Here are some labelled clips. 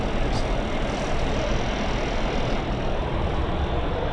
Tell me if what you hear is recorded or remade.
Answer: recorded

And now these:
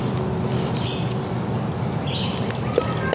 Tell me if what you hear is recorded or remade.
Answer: recorded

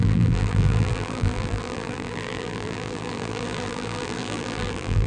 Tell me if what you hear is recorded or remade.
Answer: remade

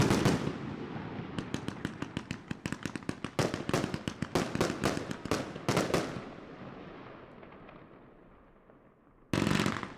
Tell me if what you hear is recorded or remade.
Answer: recorded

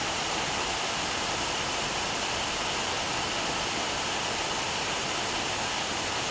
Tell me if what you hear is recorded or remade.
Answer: recorded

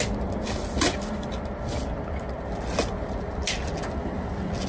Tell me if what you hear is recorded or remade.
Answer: recorded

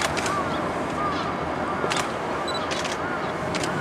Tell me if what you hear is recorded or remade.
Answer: recorded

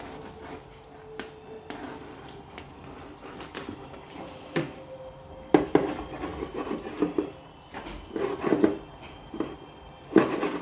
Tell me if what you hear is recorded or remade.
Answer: remade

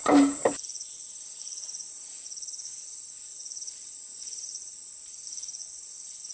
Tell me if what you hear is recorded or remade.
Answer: remade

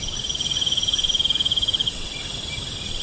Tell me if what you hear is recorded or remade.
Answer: remade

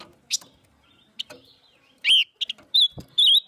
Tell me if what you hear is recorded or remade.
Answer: recorded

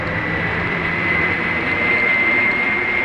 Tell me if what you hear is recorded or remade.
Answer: remade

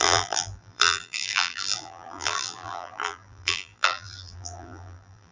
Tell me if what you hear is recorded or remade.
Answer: remade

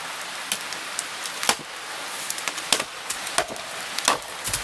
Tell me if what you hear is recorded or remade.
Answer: recorded